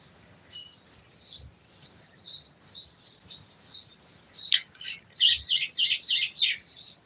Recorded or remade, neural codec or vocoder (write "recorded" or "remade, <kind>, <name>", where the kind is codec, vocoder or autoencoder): recorded